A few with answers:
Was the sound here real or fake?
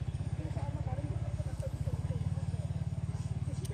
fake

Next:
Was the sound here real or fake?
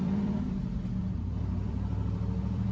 fake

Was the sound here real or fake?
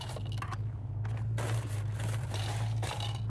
real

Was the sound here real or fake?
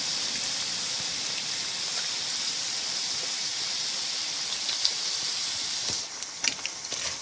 real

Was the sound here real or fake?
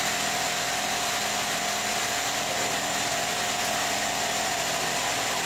real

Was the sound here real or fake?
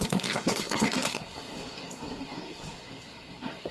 fake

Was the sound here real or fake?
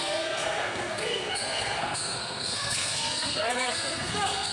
fake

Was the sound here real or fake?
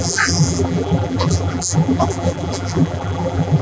fake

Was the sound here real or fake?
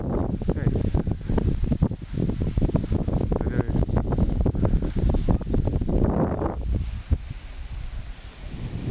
real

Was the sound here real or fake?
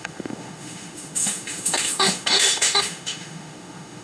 fake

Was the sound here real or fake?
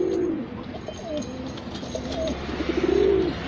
real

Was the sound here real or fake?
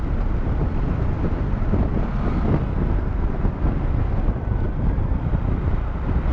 real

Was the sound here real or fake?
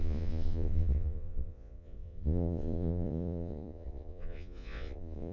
fake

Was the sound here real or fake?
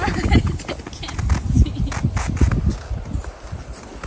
real